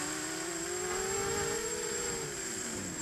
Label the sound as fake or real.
real